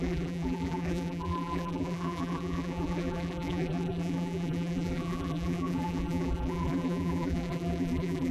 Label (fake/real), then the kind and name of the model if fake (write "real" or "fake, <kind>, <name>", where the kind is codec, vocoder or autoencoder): fake, vocoder, BigVGAN v2